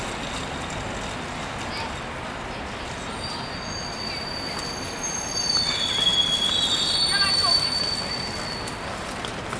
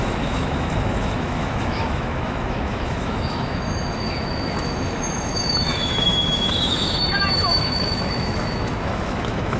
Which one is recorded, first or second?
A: first